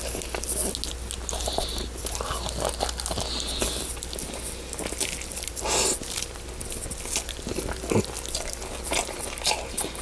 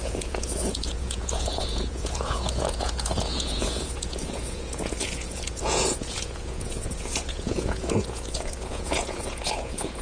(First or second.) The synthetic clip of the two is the second